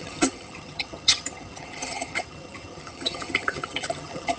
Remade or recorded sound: remade